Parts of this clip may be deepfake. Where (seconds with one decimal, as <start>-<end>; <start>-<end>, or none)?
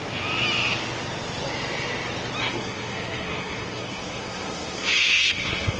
2.4-5.8